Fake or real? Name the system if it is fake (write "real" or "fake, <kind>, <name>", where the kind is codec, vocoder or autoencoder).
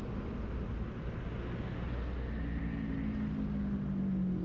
real